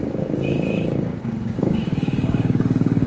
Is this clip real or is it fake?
fake